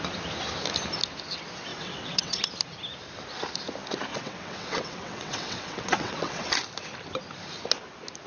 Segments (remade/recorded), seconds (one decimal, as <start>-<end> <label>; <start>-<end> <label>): 0.0-1.7 recorded; 1.7-2.4 remade; 2.4-4.1 recorded; 4.1-6.5 remade; 6.5-8.3 recorded